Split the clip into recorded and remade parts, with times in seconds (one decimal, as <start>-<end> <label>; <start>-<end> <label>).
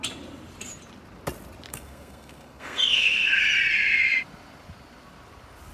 0.0-1.7 recorded; 1.7-3.4 remade; 3.4-5.7 recorded